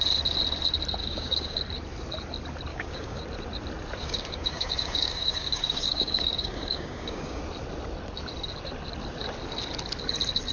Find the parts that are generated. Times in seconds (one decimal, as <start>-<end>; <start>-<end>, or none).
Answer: 1.0-1.6; 2.7-3.2; 4.0-7.4